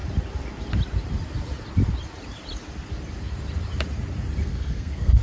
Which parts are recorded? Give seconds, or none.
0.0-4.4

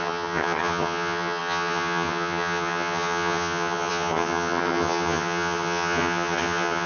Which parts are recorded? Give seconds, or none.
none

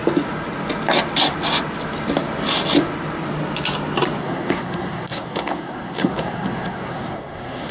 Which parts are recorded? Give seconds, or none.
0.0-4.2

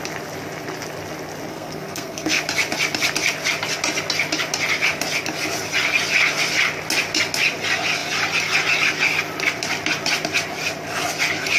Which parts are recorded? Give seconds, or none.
0.0-1.5; 2.4-11.6

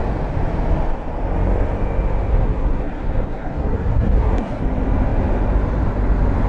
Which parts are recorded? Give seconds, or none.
0.0-2.3; 4.6-6.5